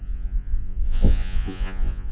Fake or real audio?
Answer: fake